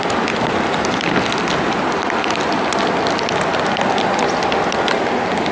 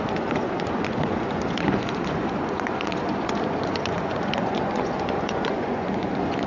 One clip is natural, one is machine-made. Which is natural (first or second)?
first